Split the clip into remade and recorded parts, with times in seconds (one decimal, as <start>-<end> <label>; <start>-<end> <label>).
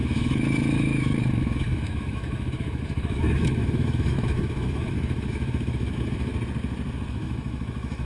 0.0-6.3 remade; 6.3-7.1 recorded; 7.1-8.1 remade